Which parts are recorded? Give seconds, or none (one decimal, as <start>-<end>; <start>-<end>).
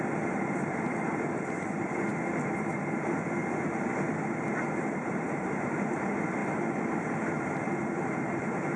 2.1-4.5